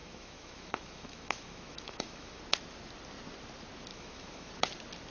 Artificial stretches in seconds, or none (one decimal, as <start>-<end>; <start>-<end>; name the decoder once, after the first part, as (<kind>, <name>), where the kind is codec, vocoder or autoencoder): 0.0-2.4 (autoencoder, DAC-VAE); 3.9-4.5